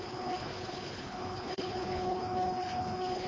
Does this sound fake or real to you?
fake